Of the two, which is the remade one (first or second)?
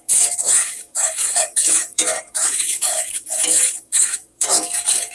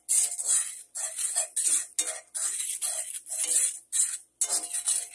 first